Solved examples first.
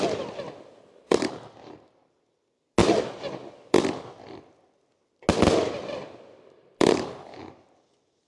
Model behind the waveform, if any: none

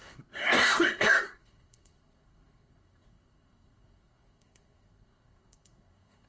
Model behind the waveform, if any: codec, SNAC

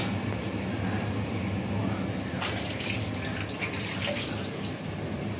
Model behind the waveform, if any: none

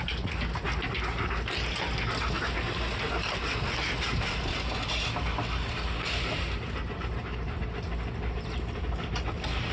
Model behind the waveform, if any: none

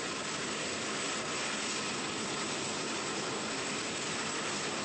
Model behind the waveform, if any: vocoder, BigVGAN v2